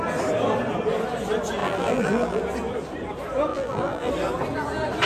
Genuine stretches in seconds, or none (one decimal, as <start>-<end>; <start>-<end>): 0.0-1.6; 2.4-3.5; 4.1-5.1